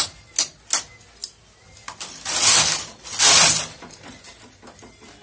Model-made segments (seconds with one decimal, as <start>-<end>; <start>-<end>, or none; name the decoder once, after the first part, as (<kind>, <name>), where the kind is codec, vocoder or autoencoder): none